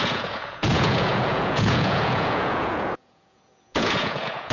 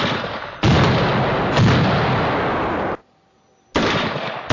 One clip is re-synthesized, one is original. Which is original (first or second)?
second